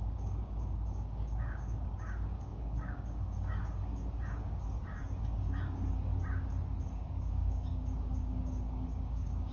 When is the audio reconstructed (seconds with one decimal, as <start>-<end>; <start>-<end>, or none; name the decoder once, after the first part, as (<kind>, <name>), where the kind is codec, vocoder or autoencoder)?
0.0-6.1 (codec, DAC); 6.8-9.5